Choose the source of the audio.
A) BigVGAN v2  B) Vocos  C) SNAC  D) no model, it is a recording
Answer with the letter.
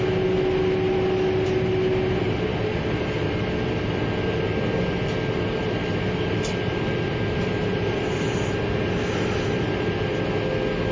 D